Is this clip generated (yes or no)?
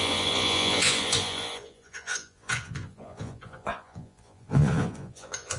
yes